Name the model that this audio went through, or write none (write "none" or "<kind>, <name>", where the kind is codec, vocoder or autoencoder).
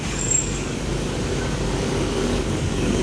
codec, DAC